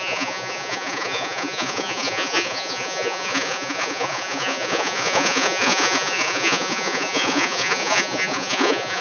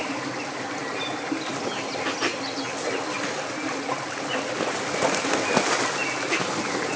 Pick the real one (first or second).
second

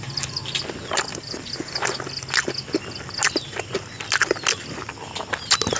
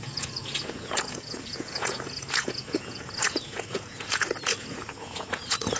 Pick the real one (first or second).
first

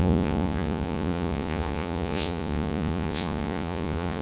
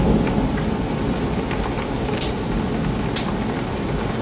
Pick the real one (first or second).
second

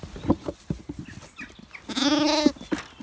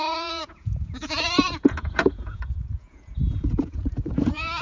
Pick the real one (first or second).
first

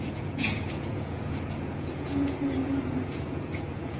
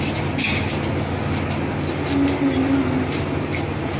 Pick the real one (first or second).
second